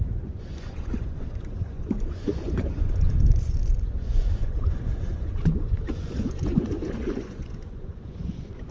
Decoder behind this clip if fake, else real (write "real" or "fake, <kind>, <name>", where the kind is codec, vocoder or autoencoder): fake, vocoder, Vocos